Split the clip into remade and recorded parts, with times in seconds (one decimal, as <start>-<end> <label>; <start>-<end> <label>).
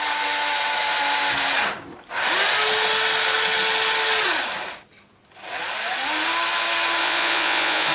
0.0-7.0 recorded; 7.0-7.9 remade